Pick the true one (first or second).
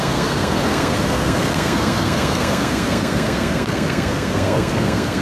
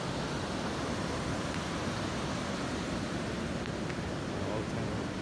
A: second